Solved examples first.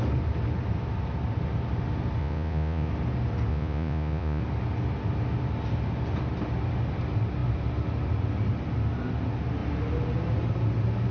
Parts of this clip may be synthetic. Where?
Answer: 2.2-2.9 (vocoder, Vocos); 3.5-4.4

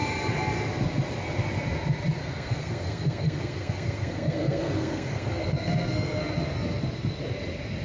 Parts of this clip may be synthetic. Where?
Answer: 2.2-6.2 (codec, SNAC)

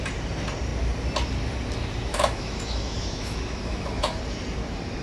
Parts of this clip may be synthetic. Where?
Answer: 2.1-4.2 (autoencoder, DAC-VAE)

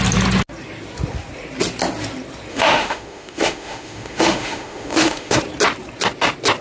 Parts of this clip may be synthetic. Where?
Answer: 2.5-5.4 (autoencoder, DAC-VAE)

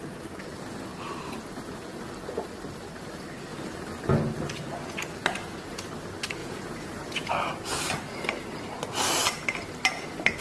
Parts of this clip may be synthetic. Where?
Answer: 6.4-7.3 (vocoder, Vocos)

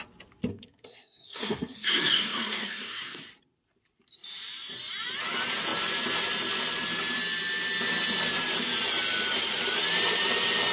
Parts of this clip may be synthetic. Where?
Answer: 0.5-3.3 (codec, SNAC)

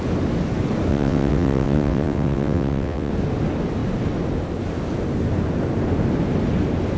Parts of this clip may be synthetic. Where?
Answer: 0.9-3.1 (vocoder, WaveNeXt)

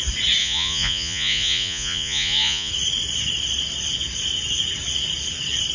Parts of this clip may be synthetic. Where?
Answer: 0.4-2.7 (vocoder, Vocos)